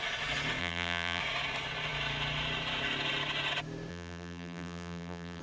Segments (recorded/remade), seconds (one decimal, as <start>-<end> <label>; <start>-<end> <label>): 0.0-0.6 recorded; 0.6-1.2 remade; 1.2-3.9 recorded; 3.9-5.4 remade